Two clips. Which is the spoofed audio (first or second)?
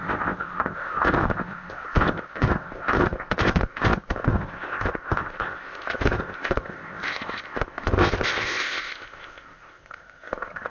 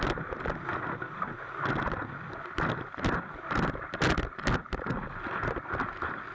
first